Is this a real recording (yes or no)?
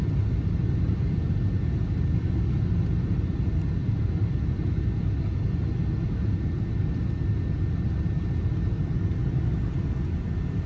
yes